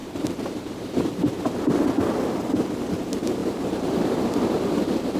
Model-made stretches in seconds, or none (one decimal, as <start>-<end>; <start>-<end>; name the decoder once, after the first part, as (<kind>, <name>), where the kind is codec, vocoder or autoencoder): 0.0-1.0 (vocoder, BigVGAN v2); 3.4-4.1